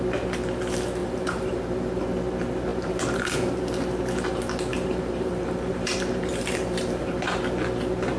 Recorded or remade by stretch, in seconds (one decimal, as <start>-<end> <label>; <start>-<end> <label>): 0.0-1.0 recorded; 1.0-2.0 remade; 2.0-2.7 recorded; 2.7-3.6 remade; 3.6-4.7 recorded; 4.7-7.4 remade; 7.4-8.2 recorded